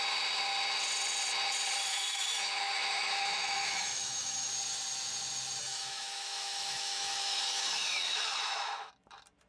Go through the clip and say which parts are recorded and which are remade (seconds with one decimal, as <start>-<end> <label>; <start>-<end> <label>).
0.0-1.9 recorded; 1.9-4.5 remade; 4.5-5.6 recorded; 5.6-8.9 remade; 8.9-9.5 recorded